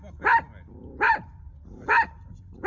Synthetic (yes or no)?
no